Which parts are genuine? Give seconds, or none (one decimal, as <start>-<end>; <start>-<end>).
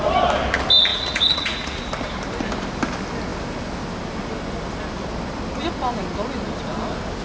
0.0-0.9; 1.8-7.2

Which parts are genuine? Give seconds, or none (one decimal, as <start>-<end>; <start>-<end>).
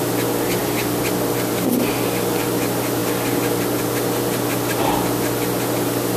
0.0-6.2